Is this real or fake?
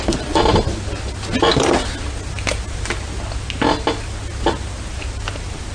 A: real